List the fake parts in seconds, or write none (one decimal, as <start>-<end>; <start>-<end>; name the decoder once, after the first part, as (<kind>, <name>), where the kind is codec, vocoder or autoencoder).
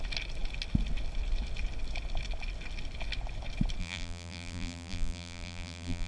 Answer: 3.8-6.1 (vocoder, BigVGAN v2)